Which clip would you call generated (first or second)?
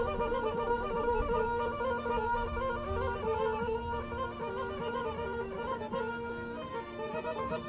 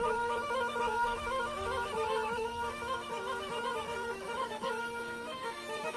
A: second